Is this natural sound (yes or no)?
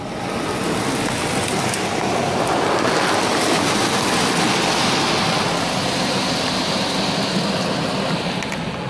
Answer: yes